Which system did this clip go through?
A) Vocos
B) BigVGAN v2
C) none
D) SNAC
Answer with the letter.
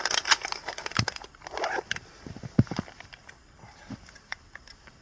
C